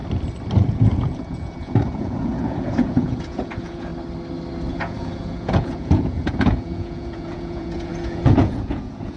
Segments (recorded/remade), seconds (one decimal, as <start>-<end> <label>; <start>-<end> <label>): 0.0-0.7 recorded; 0.7-3.9 remade; 3.9-4.7 recorded; 4.7-9.2 remade